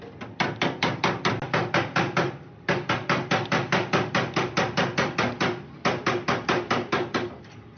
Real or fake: real